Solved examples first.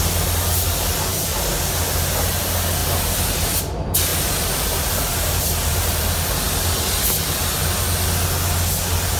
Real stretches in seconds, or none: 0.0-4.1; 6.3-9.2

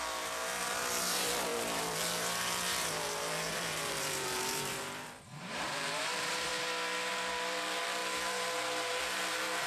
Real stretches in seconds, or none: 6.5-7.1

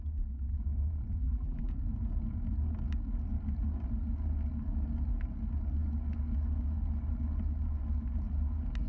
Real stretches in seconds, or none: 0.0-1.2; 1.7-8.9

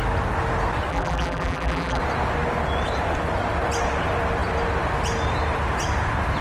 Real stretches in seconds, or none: 0.0-0.9; 2.0-6.4

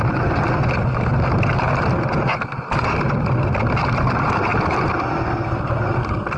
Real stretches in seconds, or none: 0.0-6.4

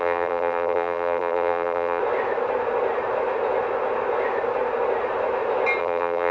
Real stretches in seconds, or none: 2.0-5.8

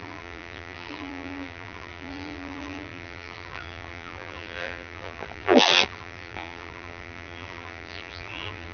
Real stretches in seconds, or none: none

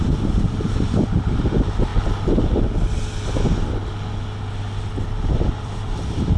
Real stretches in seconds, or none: 1.9-5.0